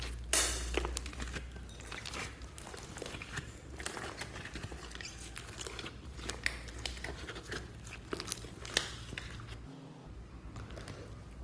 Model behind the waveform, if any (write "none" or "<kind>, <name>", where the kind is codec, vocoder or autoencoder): none